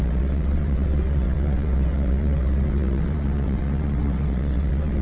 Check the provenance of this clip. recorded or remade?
remade